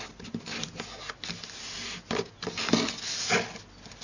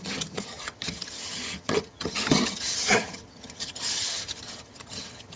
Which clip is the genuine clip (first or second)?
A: first